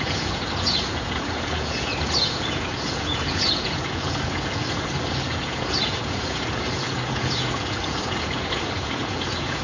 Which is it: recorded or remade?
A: remade